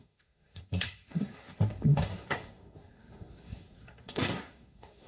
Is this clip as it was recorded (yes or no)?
no